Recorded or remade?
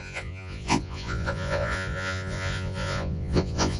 remade